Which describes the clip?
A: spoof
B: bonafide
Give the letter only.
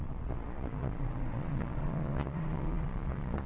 A